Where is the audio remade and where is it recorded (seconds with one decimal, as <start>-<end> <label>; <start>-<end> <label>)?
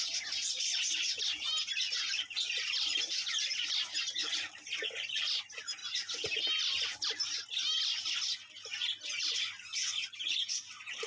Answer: 0.0-11.1 recorded